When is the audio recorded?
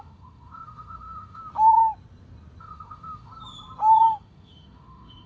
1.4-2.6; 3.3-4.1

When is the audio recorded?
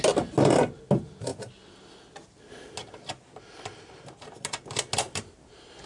0.0-5.9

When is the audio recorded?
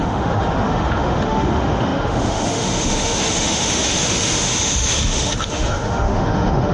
none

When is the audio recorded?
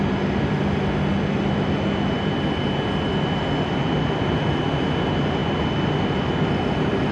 0.0-7.1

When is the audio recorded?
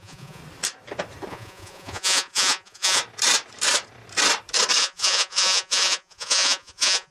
0.4-1.3; 3.0-4.8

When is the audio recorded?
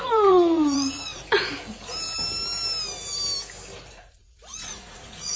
1.2-3.9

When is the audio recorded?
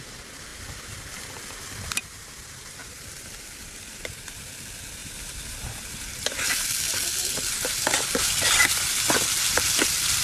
0.0-2.8; 4.6-5.0; 8.7-10.2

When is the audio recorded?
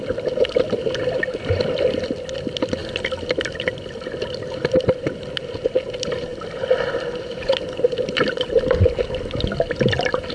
0.0-10.3